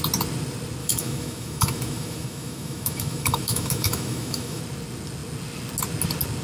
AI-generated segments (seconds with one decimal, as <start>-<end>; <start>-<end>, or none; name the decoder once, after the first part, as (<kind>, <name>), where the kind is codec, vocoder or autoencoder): 0.8-4.6 (autoencoder, DAC-VAE)